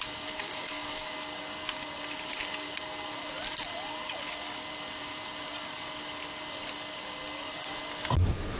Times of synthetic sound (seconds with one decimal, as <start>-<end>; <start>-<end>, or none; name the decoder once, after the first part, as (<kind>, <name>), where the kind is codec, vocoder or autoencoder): 0.4-1.1 (codec, DAC)